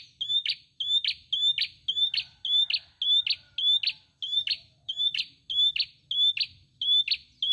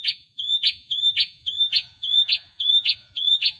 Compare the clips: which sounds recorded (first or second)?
first